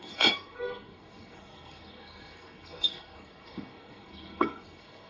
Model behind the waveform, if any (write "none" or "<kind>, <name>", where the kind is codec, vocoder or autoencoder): codec, SNAC